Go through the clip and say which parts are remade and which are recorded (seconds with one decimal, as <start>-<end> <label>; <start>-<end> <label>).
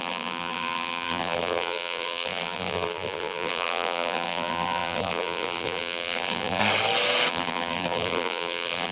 0.0-6.6 remade; 6.6-7.3 recorded; 7.3-8.9 remade